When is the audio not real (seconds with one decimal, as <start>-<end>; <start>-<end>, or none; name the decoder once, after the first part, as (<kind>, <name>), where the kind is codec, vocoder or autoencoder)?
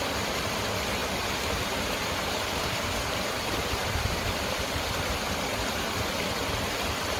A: 1.0-5.3 (vocoder, BigVGAN v2)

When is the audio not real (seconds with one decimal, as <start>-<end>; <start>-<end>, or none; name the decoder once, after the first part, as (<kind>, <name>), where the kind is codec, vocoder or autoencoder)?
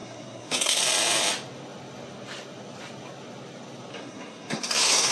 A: 0.0-0.8 (codec, SNAC); 3.9-5.1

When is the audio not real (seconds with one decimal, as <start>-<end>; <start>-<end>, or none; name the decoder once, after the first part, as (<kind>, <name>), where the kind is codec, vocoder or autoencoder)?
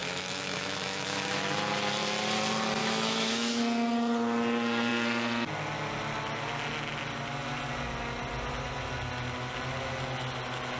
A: 0.0-1.4 (autoencoder, DAC-VAE); 2.8-3.6